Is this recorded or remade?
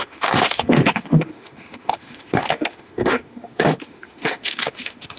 remade